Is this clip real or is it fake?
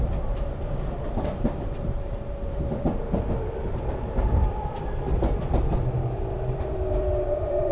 fake